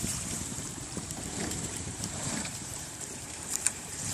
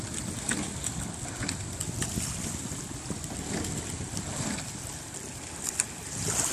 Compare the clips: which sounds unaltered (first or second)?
second